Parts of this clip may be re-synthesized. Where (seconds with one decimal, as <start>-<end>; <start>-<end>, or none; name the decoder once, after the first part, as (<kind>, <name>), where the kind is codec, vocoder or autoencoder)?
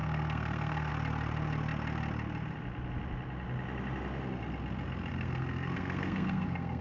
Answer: 0.0-0.9 (codec, SNAC); 5.1-6.8